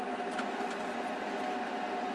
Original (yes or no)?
yes